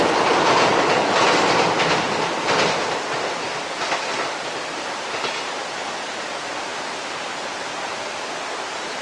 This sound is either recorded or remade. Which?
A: recorded